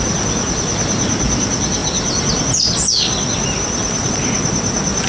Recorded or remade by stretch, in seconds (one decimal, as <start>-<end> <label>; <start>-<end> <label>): 0.0-5.1 recorded